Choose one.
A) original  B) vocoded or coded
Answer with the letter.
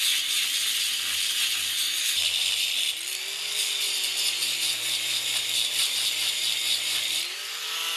B